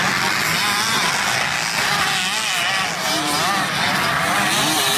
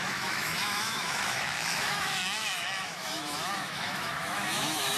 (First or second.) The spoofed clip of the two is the second